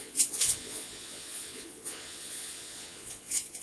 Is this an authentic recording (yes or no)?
no